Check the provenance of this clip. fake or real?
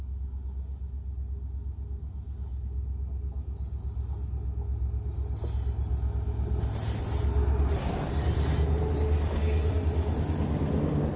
real